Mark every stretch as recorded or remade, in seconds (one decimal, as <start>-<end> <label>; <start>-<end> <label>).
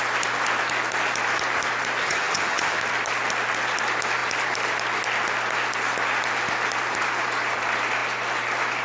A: 0.0-2.0 recorded; 2.0-2.8 remade; 2.8-8.8 recorded